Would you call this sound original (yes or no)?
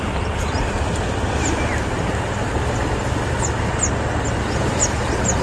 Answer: yes